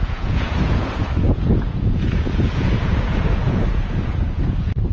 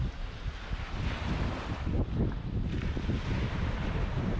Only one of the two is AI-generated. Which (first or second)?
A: first